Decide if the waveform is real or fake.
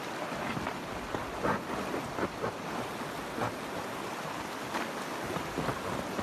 real